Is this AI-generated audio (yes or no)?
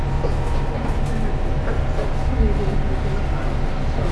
no